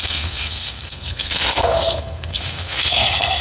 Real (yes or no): no